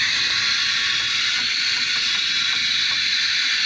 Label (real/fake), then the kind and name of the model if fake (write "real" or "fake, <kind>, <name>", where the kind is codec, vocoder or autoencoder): real